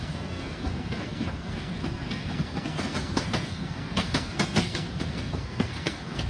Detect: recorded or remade remade